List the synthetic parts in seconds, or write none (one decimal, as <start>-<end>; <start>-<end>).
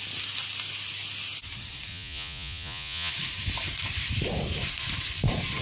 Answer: 1.9-3.1